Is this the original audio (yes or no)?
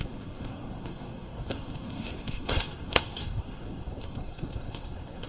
no